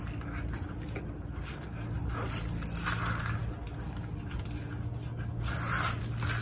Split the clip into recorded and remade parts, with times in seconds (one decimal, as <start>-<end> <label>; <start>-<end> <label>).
0.0-6.4 recorded